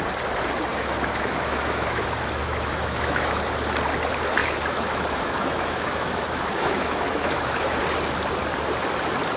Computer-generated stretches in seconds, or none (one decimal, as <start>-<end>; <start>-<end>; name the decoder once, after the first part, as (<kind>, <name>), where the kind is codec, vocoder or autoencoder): 0.7-2.0 (autoencoder, DAC-VAE); 2.4-3.4; 4.4-7.8